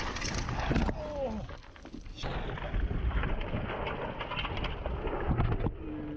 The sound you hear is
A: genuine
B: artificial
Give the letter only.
A